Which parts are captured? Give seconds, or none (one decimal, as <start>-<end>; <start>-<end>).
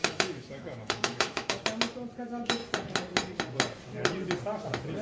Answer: 1.6-2.2; 2.6-5.0